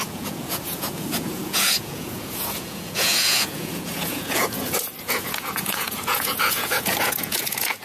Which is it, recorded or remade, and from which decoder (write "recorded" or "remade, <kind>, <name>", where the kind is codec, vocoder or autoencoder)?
remade, vocoder, Vocos